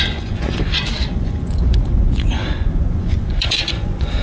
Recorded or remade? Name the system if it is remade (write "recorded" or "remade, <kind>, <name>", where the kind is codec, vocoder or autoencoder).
remade, vocoder, Vocos